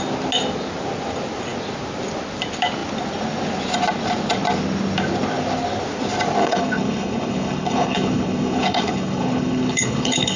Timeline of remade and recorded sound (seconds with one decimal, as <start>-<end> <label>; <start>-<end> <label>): 0.0-6.4 recorded; 6.4-10.4 remade